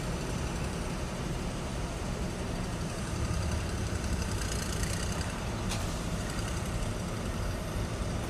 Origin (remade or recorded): remade